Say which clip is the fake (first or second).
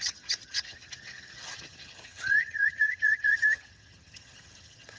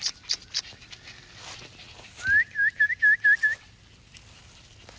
first